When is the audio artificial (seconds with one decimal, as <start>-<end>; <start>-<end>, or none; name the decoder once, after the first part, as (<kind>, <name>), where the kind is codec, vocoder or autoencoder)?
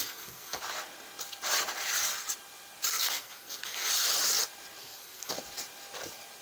0.0-0.6 (codec, SNAC); 2.9-3.9; 4.8-5.3